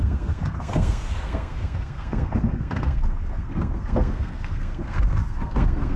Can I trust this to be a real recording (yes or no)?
no